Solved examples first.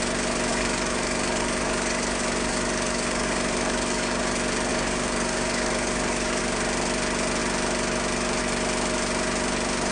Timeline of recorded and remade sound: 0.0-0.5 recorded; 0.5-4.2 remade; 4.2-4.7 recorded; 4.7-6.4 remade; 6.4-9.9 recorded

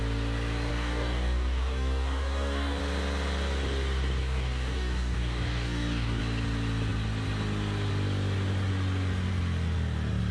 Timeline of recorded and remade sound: 0.0-0.7 recorded; 0.7-2.8 remade; 2.8-4.2 recorded; 4.2-6.2 remade; 6.2-10.3 recorded

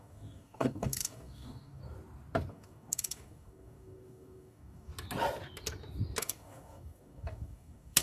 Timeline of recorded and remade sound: 0.0-1.8 remade; 1.8-2.5 recorded; 2.5-4.9 remade; 4.9-6.2 recorded; 6.2-8.0 remade

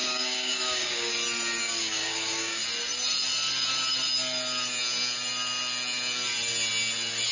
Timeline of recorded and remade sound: 0.0-1.1 remade; 1.1-1.6 recorded; 1.6-2.6 remade; 2.6-7.3 recorded

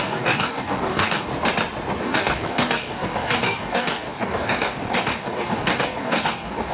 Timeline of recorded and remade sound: 0.0-1.3 remade; 1.3-2.0 recorded; 2.0-6.7 remade